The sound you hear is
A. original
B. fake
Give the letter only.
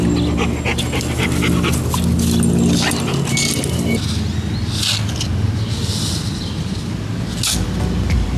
A